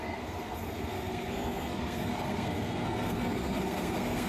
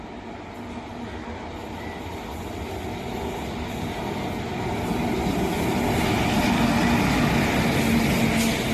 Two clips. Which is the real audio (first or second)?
second